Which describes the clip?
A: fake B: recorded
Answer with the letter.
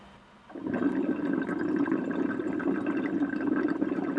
B